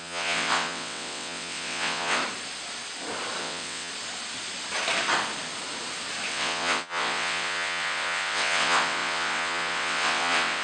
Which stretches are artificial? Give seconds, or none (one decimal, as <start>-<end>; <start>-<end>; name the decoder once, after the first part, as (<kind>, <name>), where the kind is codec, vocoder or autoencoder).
0.0-2.2 (vocoder, WaveNeXt); 3.4-3.9; 6.3-10.6